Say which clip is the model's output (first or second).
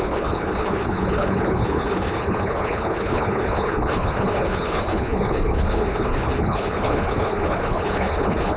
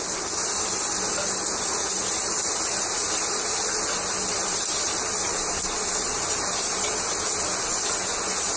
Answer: first